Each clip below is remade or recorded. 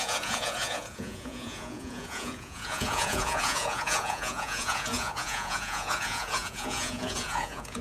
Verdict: remade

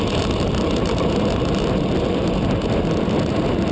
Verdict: recorded